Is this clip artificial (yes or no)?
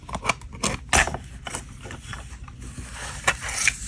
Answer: no